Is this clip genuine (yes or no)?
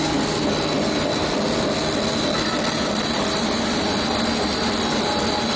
yes